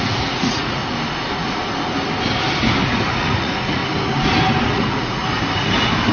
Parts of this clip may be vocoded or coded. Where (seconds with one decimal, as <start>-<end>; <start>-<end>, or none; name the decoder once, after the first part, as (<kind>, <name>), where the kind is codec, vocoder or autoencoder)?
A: 0.0-0.8 (vocoder, Vocos); 3.1-3.8; 4.7-5.2